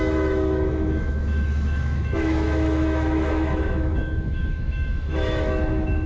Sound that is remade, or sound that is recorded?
remade